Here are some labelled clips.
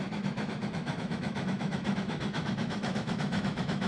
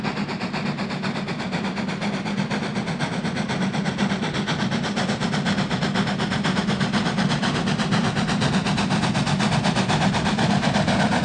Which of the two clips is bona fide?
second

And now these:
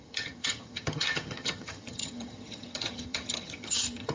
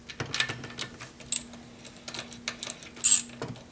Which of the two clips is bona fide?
second